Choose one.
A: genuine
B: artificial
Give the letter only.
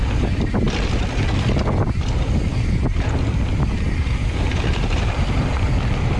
A